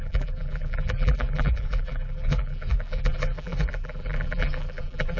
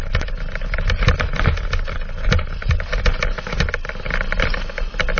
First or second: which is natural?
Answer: second